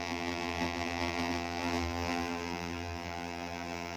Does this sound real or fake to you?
fake